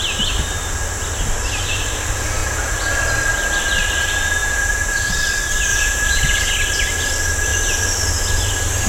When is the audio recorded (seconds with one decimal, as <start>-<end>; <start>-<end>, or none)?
0.0-2.4; 2.9-4.4; 5.1-5.7; 6.5-8.9